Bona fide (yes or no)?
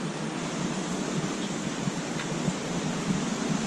yes